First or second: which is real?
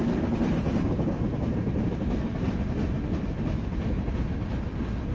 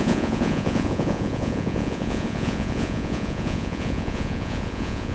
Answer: first